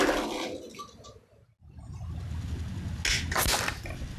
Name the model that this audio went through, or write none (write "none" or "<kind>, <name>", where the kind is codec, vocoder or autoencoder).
none